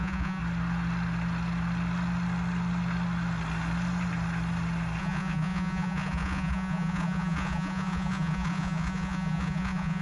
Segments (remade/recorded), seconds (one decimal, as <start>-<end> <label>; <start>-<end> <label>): 0.0-0.4 remade; 0.4-5.0 recorded; 5.0-10.0 remade